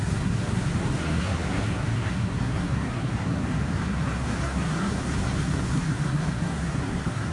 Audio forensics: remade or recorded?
remade